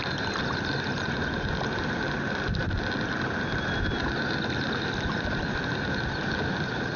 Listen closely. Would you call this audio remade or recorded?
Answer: recorded